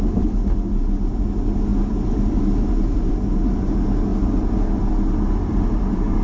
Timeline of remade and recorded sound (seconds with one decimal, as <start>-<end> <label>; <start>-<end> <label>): 0.0-6.2 recorded